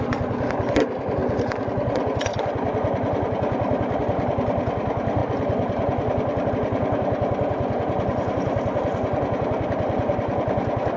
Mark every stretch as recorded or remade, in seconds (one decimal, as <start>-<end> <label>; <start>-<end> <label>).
0.0-11.0 recorded